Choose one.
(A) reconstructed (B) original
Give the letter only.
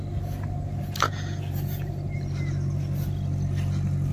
B